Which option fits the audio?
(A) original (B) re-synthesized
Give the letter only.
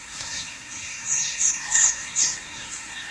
B